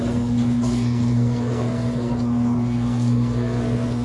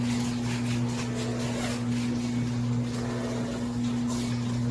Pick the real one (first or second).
second